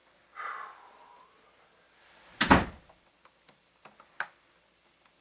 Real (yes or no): yes